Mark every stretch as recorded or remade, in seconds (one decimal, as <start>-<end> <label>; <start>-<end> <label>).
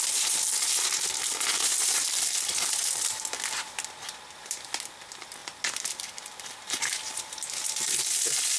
0.0-8.6 recorded